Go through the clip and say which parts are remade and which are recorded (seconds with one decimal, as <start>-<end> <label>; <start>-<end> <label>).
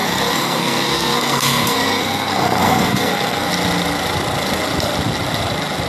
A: 0.0-3.5 remade; 3.5-5.9 recorded